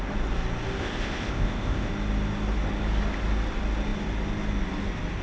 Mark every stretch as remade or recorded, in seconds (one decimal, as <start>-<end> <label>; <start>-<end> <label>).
0.0-0.8 recorded; 0.8-1.9 remade; 1.9-5.2 recorded